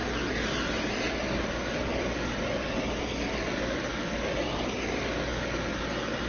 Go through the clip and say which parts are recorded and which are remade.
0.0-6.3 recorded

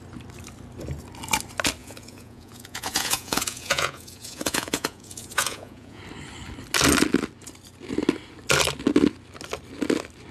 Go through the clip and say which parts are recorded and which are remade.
0.0-1.8 recorded; 1.8-6.0 remade; 6.0-10.3 recorded

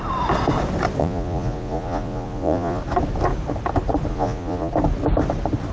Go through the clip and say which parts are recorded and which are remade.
0.0-1.0 recorded; 1.0-2.8 remade; 2.8-4.1 recorded; 4.1-4.7 remade; 4.7-5.7 recorded

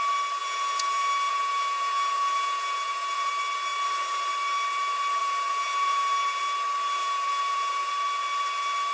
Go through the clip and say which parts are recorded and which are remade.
0.0-0.4 recorded; 0.4-3.3 remade; 3.3-5.2 recorded; 5.2-6.4 remade; 6.4-7.0 recorded; 7.0-7.9 remade; 7.9-8.9 recorded

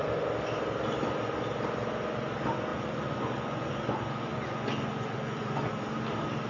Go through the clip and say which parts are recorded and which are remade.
0.0-2.7 recorded; 2.7-5.7 remade; 5.7-6.5 recorded

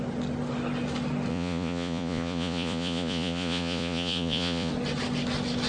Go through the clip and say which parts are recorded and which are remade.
0.0-1.3 recorded; 1.3-4.7 remade; 4.7-5.7 recorded

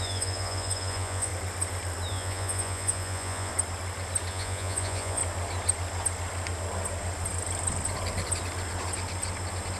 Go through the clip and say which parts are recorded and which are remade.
0.0-1.3 remade; 1.3-2.1 recorded; 2.1-3.5 remade; 3.5-4.3 recorded; 4.3-5.2 remade; 5.2-9.8 recorded